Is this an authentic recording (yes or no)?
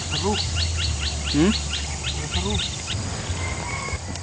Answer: yes